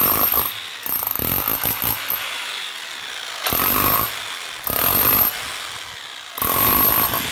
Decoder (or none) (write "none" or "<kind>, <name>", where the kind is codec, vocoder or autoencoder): none